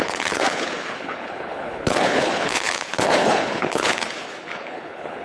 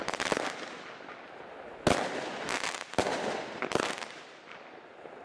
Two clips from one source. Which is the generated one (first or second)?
first